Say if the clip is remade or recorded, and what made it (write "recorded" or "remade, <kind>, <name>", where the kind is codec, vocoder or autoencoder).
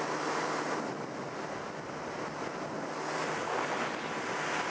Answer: recorded